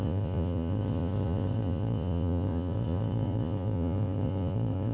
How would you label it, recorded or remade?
remade